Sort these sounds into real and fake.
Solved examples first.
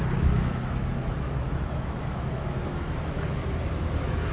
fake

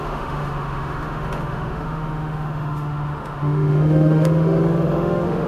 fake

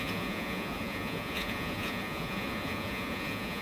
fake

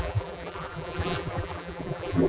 fake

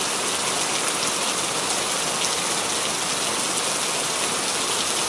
real